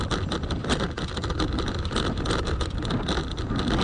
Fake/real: fake